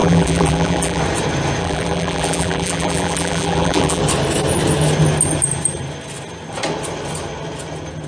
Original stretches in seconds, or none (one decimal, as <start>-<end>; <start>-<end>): 1.0-1.6; 4.0-8.1

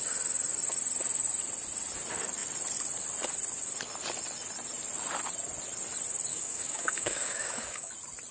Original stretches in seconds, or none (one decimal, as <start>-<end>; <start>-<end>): 0.0-6.3; 7.9-8.3

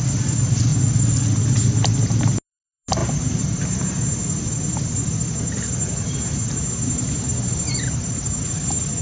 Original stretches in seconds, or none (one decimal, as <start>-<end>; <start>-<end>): 0.0-7.3; 8.3-9.0

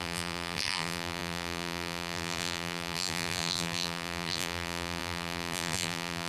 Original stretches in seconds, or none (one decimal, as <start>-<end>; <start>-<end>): none

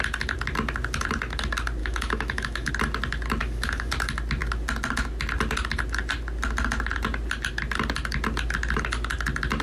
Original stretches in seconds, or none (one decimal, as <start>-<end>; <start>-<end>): 0.0-1.8; 2.7-3.4; 3.9-9.6

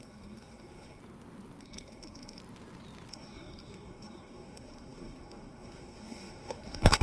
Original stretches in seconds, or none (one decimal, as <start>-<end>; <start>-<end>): 1.0-1.6; 2.4-3.1